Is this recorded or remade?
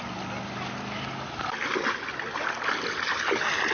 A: recorded